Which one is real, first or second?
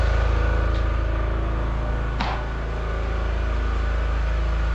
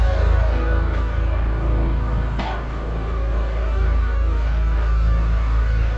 first